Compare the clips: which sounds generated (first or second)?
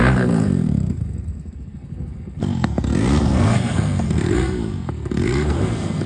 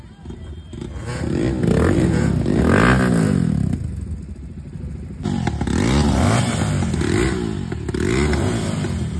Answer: first